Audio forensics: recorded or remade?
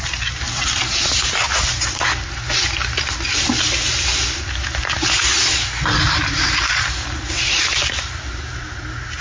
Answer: recorded